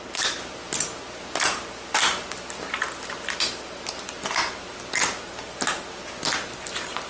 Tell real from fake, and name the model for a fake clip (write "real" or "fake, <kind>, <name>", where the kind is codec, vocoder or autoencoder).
real